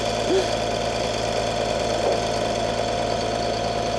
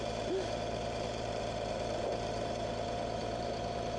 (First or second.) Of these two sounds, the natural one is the first